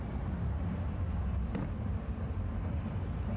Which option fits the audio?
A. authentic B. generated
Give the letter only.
A